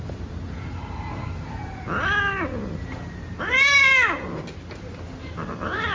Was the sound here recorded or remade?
recorded